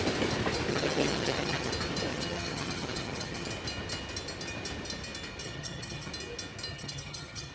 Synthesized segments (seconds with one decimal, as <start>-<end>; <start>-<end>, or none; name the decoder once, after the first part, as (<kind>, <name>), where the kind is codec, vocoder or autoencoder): 0.7-1.7 (vocoder, HiFi-GAN); 2.1-3.5; 5.4-6.1; 6.7-7.5